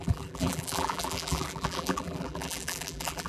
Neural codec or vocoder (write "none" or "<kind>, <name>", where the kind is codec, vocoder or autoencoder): vocoder, BigVGAN v2